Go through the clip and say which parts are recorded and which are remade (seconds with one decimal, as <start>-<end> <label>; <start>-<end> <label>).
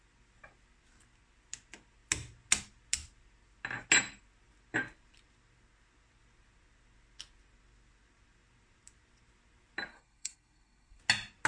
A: 0.0-9.9 recorded; 9.9-11.0 remade; 11.0-11.5 recorded